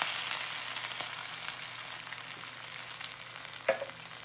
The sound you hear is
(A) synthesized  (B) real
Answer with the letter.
B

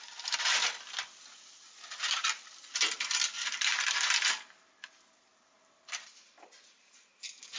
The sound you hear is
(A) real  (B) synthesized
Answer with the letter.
A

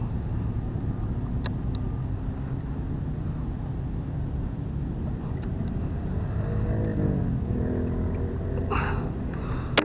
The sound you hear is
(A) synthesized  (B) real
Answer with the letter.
B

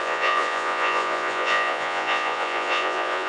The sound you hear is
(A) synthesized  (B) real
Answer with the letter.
A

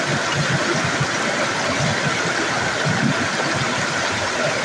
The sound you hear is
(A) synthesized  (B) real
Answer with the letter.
B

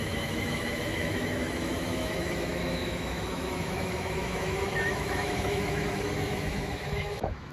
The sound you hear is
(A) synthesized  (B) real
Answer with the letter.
A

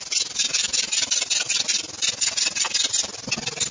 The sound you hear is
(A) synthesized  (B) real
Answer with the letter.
A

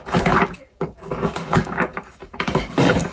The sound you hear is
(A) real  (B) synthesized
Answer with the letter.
B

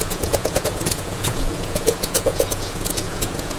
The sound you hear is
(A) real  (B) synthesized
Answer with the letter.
B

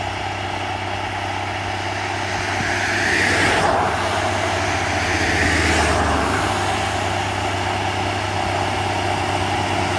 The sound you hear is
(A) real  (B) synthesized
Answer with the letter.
A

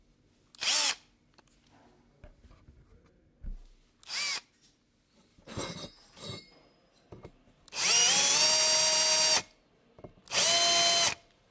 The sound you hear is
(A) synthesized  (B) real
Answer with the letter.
B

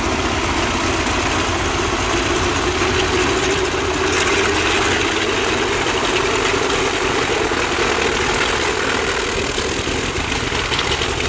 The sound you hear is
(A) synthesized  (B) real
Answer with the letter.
B